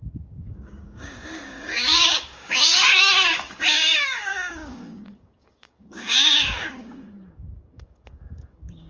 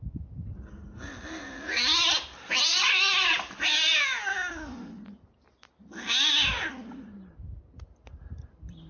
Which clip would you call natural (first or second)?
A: second